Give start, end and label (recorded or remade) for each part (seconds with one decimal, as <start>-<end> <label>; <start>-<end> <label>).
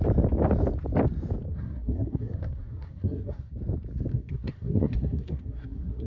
0.0-1.5 recorded; 1.5-3.5 remade; 3.5-4.1 recorded; 4.1-6.1 remade